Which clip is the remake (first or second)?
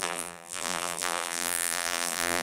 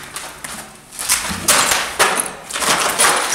first